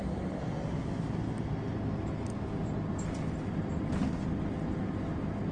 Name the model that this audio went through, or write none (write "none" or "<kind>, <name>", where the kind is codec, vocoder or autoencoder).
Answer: none